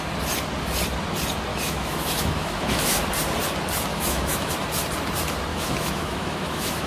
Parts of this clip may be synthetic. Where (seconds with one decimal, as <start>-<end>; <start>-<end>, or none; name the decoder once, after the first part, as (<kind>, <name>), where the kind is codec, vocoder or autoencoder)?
1.5-3.0 (autoencoder, DAC-VAE); 3.9-4.5; 5.5-6.9